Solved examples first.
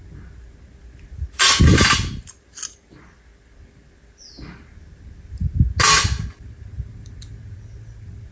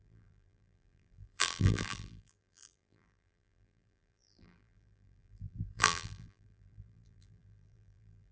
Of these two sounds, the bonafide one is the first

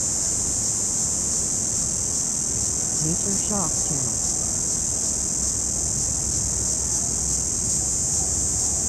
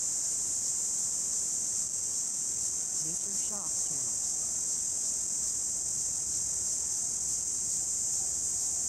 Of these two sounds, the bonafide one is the first